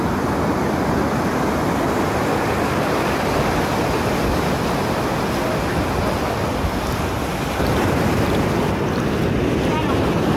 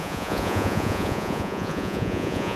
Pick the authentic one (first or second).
first